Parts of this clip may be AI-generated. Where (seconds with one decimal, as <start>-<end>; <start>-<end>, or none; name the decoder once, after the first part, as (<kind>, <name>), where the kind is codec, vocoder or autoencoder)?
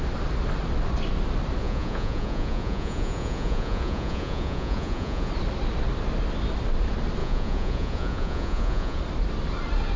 1.6-5.3 (vocoder, Vocos); 7.2-9.0